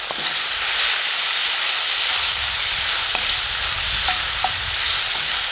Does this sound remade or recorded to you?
recorded